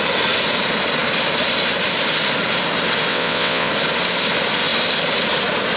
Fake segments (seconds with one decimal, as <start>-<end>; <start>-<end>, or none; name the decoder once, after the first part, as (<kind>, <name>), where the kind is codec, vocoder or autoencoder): 3.1-3.7 (vocoder, WaveNeXt)